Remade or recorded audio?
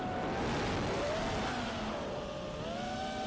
recorded